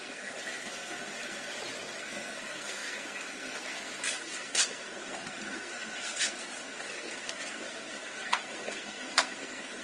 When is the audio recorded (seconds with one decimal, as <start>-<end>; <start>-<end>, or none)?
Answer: 1.5-2.0